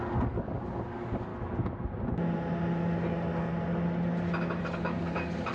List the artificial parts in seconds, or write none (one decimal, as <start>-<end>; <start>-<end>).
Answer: 0.0-1.3; 4.6-5.5